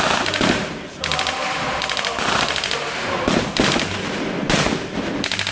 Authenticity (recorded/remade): remade